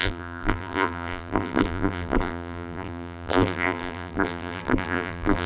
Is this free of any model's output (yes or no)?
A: no